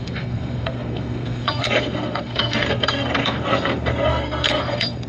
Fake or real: fake